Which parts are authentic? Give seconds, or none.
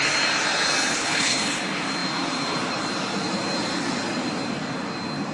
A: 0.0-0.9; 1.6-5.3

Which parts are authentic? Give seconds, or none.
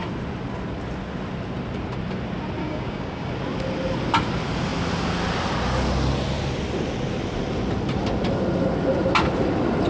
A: 0.0-2.6; 3.3-9.9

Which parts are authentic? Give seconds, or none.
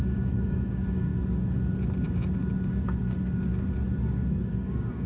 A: 1.1-2.7; 3.5-4.1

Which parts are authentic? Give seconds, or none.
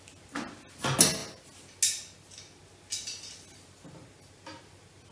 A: 0.0-5.1